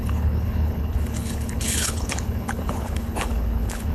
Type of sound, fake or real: fake